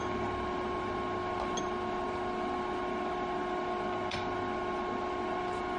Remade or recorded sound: recorded